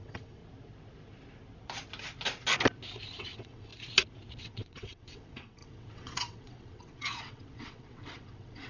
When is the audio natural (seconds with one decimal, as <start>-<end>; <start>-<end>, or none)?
0.4-3.2; 3.7-4.4